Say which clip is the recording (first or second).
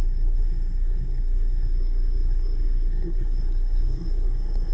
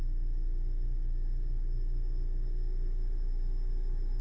second